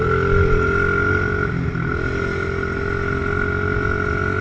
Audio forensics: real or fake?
real